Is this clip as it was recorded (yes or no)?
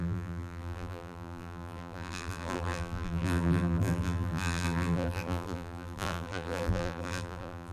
no